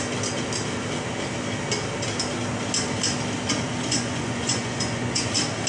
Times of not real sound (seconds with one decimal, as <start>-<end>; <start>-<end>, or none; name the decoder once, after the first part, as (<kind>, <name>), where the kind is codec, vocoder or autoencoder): 3.6-5.3 (vocoder, Vocos)